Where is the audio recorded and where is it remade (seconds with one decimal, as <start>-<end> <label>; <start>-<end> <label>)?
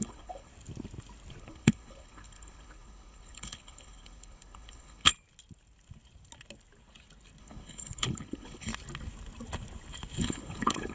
0.0-0.5 remade; 0.5-1.4 recorded; 1.4-5.1 remade; 5.1-7.4 recorded; 7.4-8.7 remade; 8.7-10.2 recorded; 10.2-10.9 remade